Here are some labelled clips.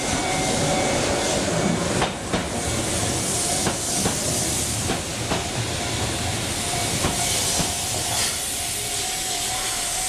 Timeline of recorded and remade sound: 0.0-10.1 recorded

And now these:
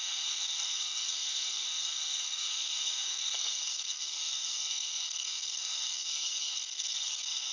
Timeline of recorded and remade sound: 0.0-7.5 remade

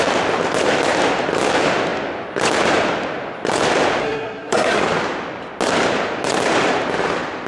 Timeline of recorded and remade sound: 0.0-4.0 recorded; 4.0-4.8 remade; 4.8-7.5 recorded

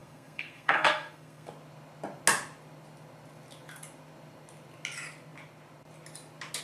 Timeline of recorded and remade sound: 0.0-1.5 remade; 1.5-6.6 recorded

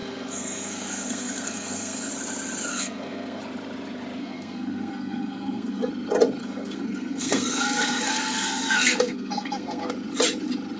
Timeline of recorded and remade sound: 0.0-2.1 remade; 2.1-2.7 recorded; 2.7-3.4 remade; 3.4-4.2 recorded; 4.2-5.9 remade; 5.9-6.4 recorded; 6.4-9.9 remade; 9.9-10.8 recorded